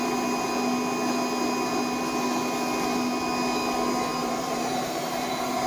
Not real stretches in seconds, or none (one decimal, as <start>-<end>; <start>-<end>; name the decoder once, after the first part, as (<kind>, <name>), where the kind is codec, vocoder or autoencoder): 4.2-5.7 (vocoder, BigVGAN v2)